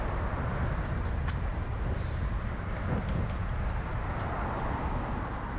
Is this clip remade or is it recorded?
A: recorded